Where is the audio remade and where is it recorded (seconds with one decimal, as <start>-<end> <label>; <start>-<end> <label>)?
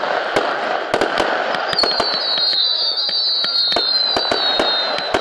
0.0-2.5 recorded; 2.5-3.1 remade; 3.1-5.2 recorded